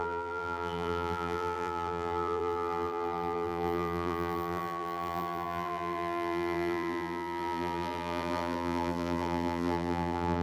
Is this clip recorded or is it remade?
remade